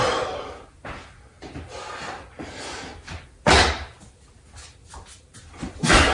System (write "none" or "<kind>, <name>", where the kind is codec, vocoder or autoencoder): none